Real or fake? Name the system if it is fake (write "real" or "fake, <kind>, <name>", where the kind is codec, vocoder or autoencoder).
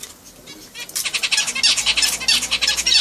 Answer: real